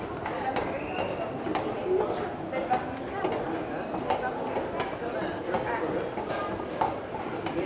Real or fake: real